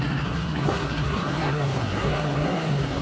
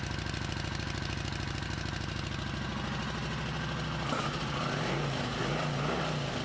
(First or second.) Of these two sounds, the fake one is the first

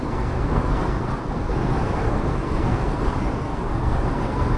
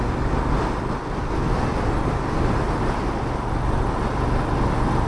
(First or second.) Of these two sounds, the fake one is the first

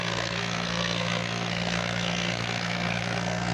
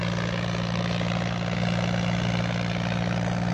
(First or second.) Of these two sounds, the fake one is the first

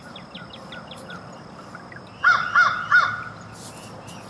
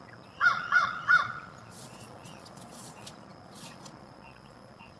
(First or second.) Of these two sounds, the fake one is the second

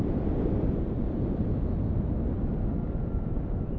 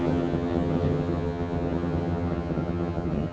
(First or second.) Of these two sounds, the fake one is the second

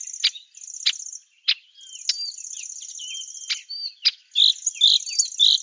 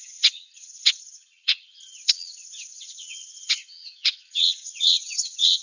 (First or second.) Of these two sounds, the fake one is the second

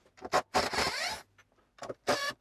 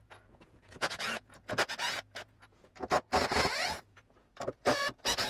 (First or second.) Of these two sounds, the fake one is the second